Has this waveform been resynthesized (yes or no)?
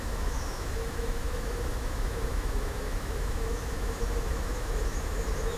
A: yes